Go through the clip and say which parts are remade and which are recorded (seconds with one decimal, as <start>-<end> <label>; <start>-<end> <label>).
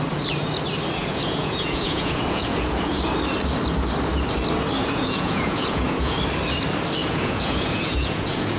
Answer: 0.0-1.0 recorded; 1.0-3.1 remade; 3.1-4.8 recorded; 4.8-6.2 remade; 6.2-7.0 recorded; 7.0-8.6 remade